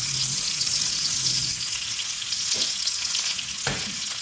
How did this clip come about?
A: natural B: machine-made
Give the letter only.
B